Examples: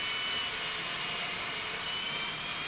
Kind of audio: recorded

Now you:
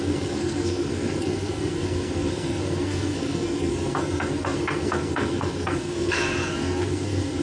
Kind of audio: remade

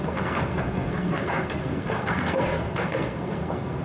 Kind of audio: remade